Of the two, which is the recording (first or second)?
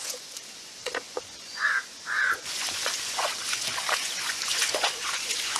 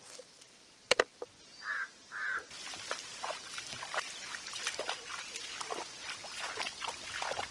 second